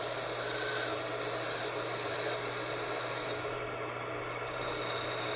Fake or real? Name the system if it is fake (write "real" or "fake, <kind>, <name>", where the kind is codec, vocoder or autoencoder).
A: real